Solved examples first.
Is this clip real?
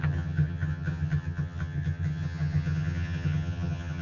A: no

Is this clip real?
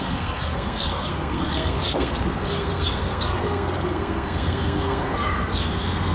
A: no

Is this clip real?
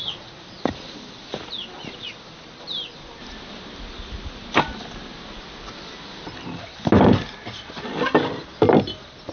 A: yes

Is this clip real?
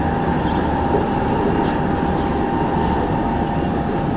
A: yes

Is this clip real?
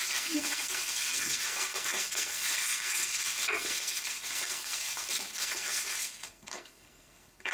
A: no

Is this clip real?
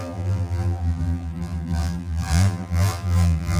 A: no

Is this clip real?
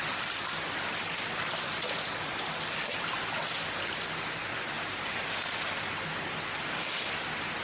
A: yes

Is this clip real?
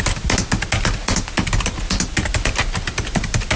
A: yes